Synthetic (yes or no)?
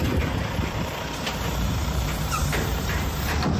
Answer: yes